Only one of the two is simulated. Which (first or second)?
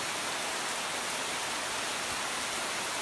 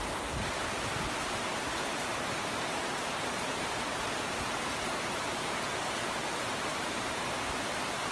second